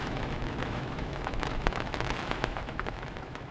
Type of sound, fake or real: fake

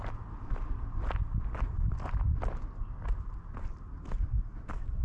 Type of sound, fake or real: real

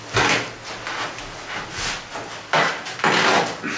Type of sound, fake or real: real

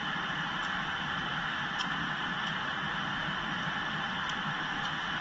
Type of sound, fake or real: real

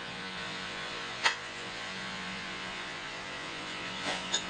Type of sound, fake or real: fake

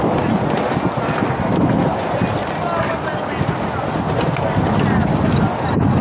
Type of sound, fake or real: real